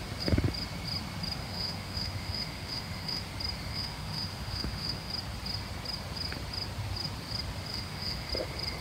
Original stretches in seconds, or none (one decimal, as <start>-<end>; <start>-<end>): 0.0-1.4; 3.2-3.7; 5.1-7.7; 8.3-8.8